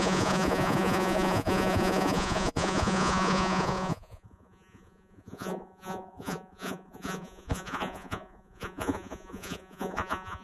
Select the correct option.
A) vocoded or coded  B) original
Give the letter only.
A